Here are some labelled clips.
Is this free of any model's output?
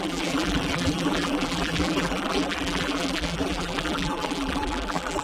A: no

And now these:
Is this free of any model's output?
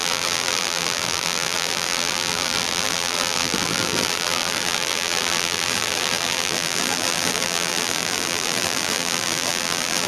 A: no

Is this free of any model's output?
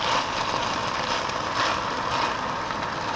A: yes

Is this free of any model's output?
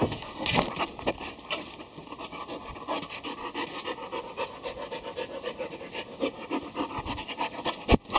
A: yes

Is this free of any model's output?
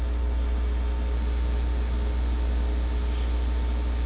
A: yes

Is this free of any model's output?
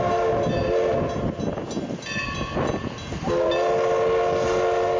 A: yes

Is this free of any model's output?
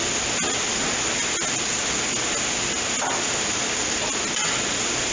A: yes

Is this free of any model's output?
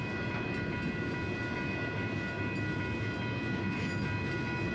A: yes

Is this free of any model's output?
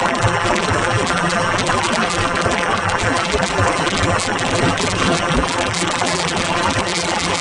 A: no